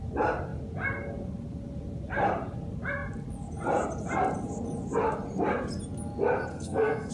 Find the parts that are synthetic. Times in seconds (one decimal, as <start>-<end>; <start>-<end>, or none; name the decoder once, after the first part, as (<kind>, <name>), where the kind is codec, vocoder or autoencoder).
6.5-7.1 (codec, SNAC)